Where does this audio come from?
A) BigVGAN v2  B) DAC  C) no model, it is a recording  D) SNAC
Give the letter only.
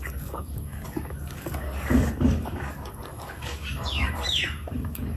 B